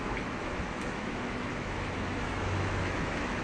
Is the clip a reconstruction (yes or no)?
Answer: yes